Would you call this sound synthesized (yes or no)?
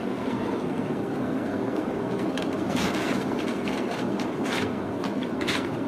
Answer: yes